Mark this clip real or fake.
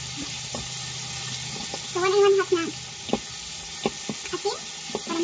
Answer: real